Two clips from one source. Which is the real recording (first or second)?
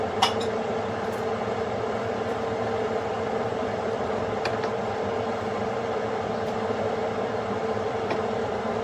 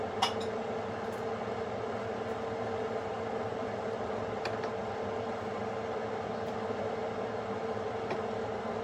second